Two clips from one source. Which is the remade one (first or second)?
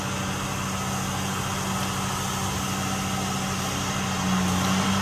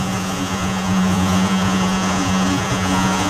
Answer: second